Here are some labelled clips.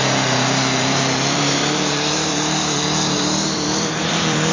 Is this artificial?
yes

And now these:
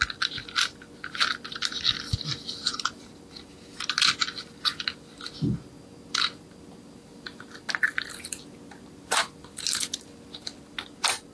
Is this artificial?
no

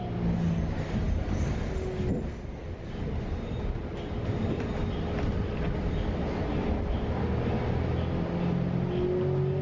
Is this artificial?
no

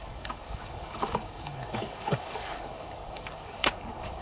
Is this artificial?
yes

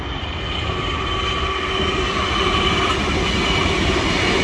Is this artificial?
no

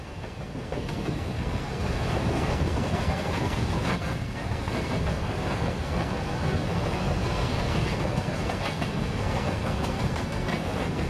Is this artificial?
yes